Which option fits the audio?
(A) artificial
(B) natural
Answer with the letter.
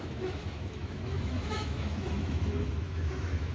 A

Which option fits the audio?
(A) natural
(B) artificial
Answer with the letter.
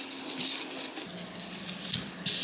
A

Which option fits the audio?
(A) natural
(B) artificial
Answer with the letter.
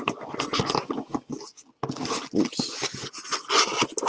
A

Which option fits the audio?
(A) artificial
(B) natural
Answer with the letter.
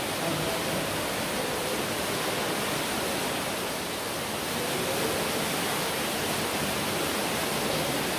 B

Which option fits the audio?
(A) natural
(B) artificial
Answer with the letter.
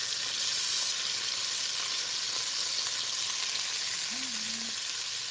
A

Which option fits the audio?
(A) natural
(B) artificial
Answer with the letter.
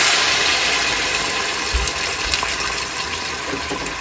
A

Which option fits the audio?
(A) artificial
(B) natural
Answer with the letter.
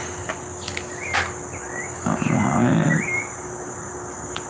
B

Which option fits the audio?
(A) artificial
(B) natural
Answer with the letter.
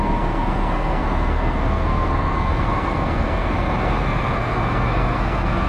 A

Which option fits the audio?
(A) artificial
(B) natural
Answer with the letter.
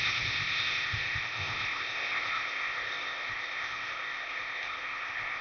A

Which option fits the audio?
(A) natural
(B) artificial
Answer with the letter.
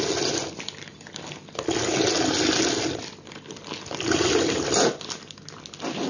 A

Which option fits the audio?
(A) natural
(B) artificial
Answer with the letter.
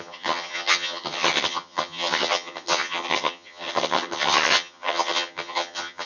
B